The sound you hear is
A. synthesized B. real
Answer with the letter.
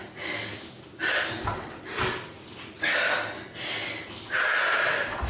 B